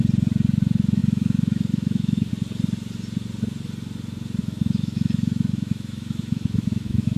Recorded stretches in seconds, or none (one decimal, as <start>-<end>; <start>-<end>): 0.0-1.0; 2.3-4.4